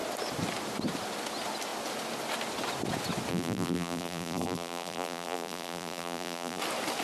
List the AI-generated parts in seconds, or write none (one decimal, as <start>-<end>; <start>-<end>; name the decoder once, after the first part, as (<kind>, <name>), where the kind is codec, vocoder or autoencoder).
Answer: 3.3-6.6 (vocoder, BigVGAN v2)